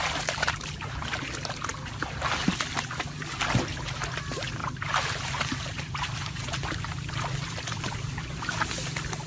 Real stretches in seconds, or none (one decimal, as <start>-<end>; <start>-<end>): 1.2-4.6; 7.1-9.3

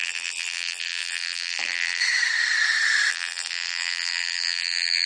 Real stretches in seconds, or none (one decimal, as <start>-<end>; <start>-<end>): 2.0-3.1

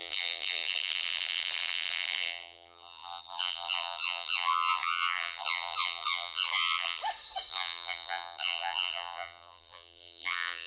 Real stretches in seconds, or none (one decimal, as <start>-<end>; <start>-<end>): 7.0-7.5

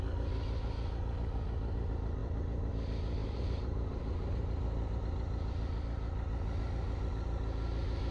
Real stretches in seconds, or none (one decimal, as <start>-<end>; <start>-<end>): 0.0-3.2; 5.0-8.1